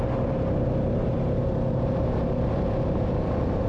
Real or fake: real